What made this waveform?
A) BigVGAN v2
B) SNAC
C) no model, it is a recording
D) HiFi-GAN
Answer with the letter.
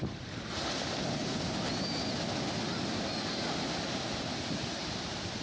C